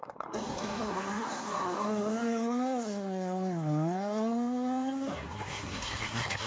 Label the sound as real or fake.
fake